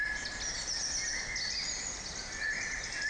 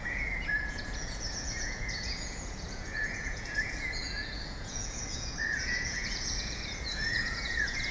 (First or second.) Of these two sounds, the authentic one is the first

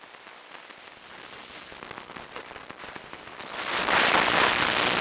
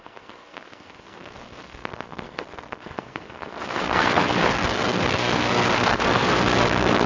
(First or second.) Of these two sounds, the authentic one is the first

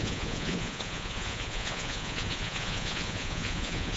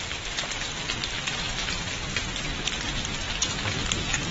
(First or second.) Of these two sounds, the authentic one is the second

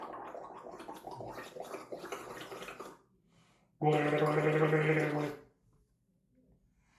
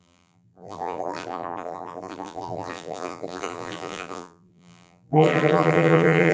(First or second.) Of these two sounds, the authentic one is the first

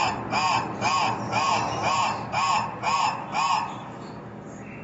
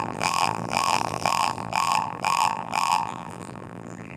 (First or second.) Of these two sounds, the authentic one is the first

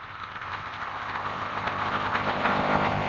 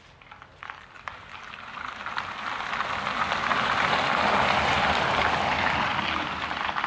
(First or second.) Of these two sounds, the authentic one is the second